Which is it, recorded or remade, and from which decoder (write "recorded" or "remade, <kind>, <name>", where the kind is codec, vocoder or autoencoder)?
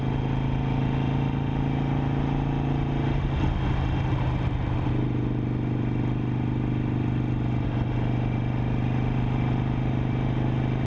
recorded